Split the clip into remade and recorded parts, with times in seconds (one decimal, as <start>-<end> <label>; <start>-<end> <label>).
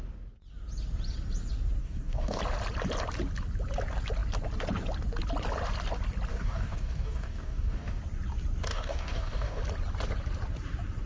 0.0-1.8 recorded; 1.8-2.4 remade; 2.4-6.3 recorded; 6.3-8.0 remade; 8.0-8.7 recorded; 8.7-9.6 remade; 9.6-11.1 recorded